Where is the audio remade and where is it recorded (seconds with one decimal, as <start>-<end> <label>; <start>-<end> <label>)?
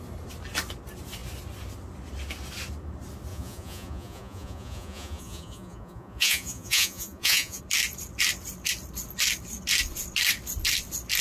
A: 0.0-3.3 recorded; 3.3-7.6 remade; 7.6-11.2 recorded